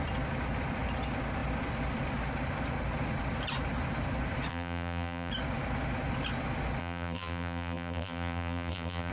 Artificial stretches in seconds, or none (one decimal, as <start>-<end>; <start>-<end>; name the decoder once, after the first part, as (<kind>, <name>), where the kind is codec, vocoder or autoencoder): 4.5-5.3 (vocoder, BigVGAN v2); 6.8-9.1